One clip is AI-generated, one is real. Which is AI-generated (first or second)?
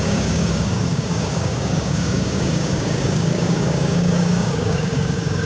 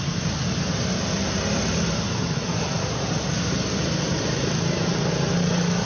first